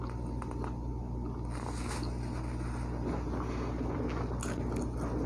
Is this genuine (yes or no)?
yes